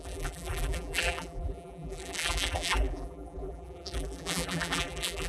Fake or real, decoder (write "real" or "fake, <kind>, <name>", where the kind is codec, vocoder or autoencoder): fake, vocoder, BigVGAN v2